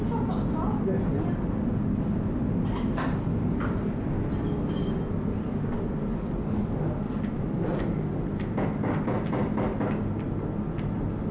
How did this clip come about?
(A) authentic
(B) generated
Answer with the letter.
A